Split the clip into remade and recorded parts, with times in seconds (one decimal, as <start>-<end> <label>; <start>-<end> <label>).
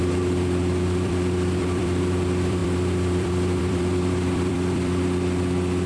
0.0-5.9 remade